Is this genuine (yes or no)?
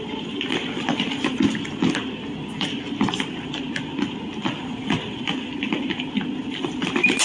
yes